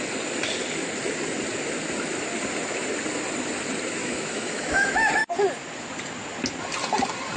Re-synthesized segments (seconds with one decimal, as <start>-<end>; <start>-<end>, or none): 4.0-5.1